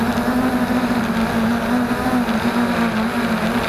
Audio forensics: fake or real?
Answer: real